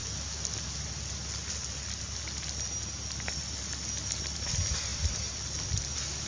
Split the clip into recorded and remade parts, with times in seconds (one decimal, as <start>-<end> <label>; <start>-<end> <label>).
0.0-6.3 recorded